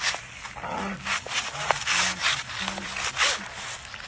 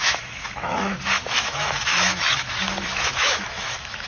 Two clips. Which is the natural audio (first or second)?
first